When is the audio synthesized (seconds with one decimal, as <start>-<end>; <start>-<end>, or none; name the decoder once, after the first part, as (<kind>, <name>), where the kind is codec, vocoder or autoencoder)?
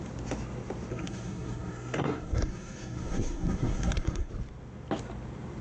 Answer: 0.9-4.3 (codec, SNAC)